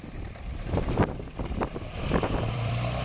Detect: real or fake fake